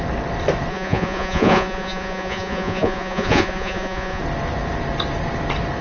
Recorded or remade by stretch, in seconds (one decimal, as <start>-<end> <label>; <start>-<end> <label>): 0.0-0.7 recorded; 0.7-4.2 remade; 4.2-5.8 recorded